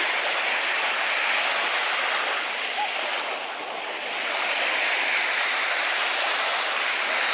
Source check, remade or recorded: recorded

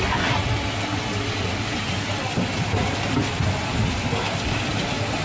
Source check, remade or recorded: recorded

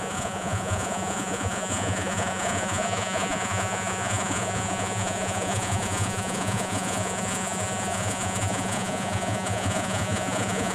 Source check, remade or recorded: remade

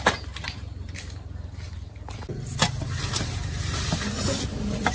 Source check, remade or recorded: recorded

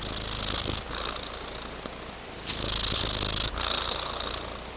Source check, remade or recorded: recorded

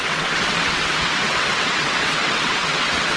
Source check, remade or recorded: remade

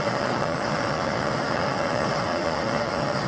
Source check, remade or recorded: remade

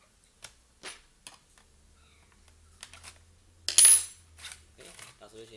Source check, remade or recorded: recorded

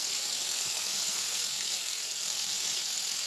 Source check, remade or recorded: remade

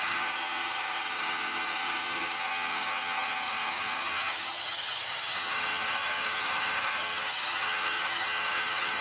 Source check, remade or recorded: remade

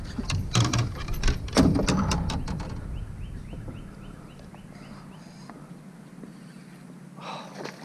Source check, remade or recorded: recorded